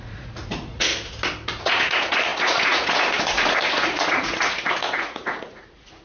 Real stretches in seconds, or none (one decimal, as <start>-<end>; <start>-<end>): 0.9-1.6